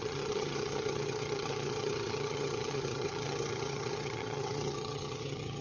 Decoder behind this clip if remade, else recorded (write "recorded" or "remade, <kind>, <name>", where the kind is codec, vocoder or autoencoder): remade, vocoder, HiFi-GAN